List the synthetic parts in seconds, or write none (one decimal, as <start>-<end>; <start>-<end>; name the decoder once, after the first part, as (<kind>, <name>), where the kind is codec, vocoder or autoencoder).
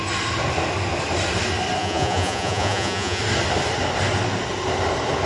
1.8-3.2 (vocoder, Vocos)